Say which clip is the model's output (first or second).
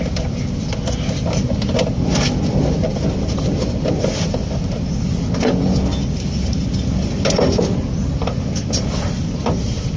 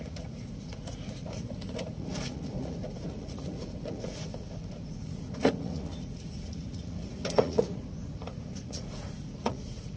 second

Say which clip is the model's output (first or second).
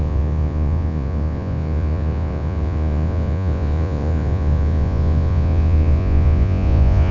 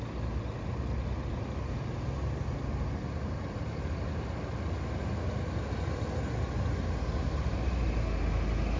first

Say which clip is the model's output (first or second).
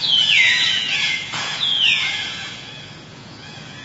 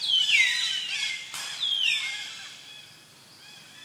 first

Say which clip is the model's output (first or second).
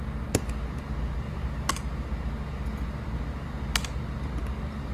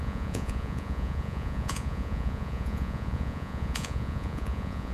second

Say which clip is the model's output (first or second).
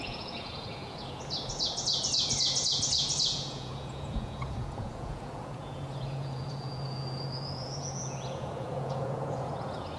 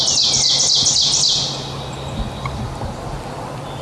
first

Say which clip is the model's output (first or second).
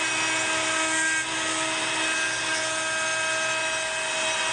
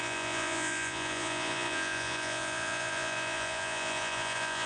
second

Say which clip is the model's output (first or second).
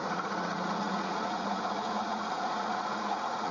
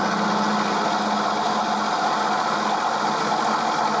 first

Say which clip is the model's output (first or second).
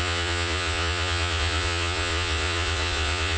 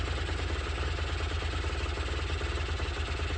first